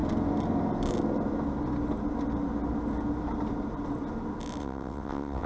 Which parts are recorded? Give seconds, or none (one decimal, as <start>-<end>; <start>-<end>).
0.0-4.6